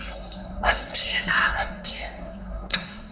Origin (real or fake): fake